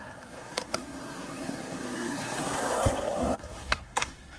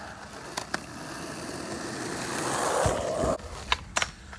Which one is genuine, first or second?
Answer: second